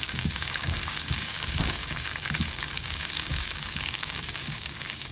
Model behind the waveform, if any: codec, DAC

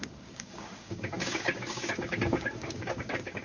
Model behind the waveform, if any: codec, DAC